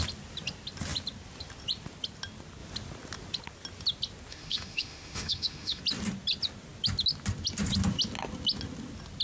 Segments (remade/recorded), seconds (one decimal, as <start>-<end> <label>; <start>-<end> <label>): 0.0-4.3 recorded; 4.3-5.8 remade; 5.8-9.2 recorded